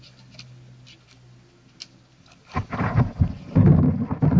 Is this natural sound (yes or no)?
yes